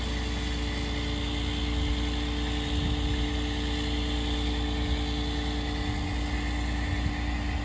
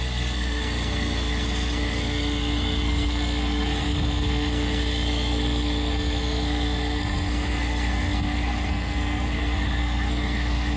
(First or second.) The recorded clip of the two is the first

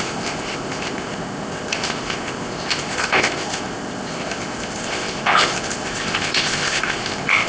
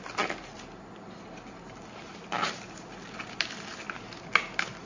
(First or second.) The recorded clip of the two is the second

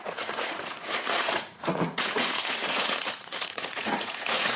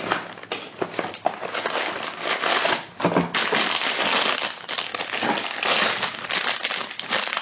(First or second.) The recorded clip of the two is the second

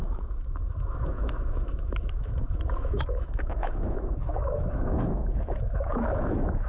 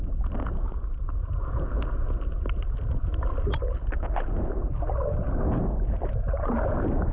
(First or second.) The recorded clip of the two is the second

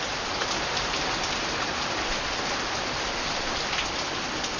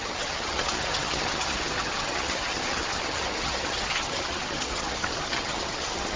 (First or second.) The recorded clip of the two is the first